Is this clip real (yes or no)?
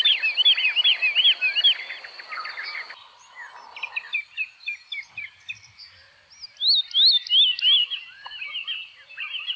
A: yes